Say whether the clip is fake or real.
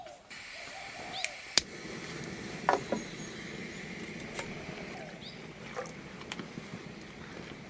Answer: real